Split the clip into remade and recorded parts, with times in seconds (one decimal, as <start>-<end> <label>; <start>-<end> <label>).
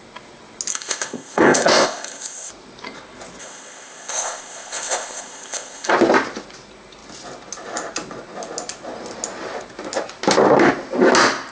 0.0-0.7 recorded; 0.7-2.5 remade; 2.5-3.4 recorded; 3.4-5.9 remade; 5.9-11.5 recorded